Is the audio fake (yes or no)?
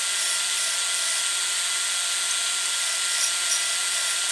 no